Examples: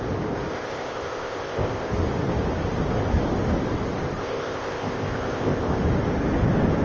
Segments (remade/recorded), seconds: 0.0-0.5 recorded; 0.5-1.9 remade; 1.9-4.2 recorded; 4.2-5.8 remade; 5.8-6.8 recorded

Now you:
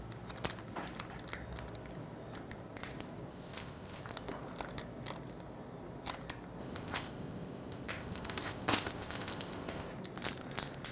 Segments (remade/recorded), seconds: 0.0-3.3 recorded; 3.3-4.0 remade; 4.0-6.6 recorded; 6.6-9.9 remade; 9.9-10.9 recorded

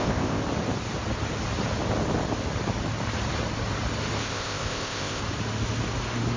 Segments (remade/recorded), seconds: 0.0-0.4 remade; 0.4-4.2 recorded; 4.2-5.2 remade; 5.2-6.4 recorded

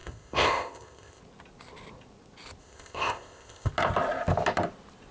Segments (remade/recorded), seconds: 0.0-1.2 remade; 1.2-2.6 recorded; 2.6-3.7 remade; 3.7-5.1 recorded

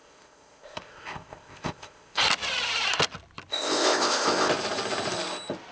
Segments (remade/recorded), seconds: 0.0-2.2 remade; 2.2-3.5 recorded; 3.5-4.5 remade; 4.5-5.7 recorded

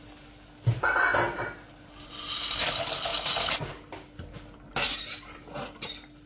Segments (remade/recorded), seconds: 0.0-6.3 recorded

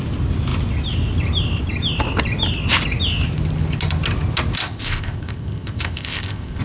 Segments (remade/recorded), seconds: 0.0-4.6 recorded; 4.6-6.6 remade